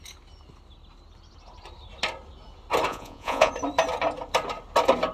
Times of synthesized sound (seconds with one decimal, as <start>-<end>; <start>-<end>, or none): 2.9-3.5

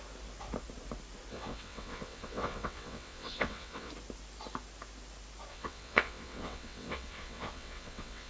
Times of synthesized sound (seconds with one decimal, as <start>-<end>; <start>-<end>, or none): 1.3-3.9; 5.5-8.3

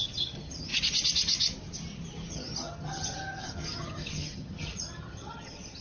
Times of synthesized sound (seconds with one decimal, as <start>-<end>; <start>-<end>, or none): 0.0-0.7; 2.3-5.8